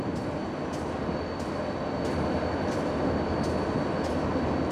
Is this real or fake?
real